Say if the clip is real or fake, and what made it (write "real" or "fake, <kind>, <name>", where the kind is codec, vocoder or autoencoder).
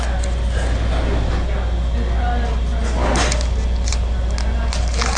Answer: real